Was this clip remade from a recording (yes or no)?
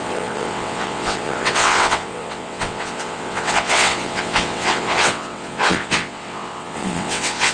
yes